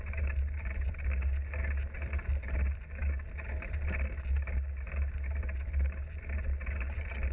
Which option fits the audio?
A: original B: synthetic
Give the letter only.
A